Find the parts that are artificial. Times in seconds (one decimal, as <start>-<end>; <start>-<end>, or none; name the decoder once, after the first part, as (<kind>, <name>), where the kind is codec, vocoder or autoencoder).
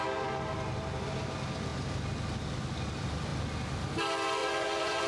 4.4-5.1 (vocoder, Vocos)